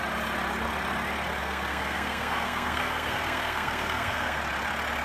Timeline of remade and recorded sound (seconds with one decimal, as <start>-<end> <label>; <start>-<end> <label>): 0.0-1.4 recorded; 1.4-4.4 remade; 4.4-5.0 recorded